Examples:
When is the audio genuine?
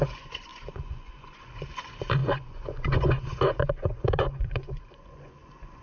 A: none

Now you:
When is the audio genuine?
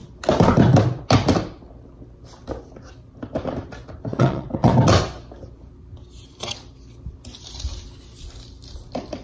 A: 0.0-4.1; 4.7-9.2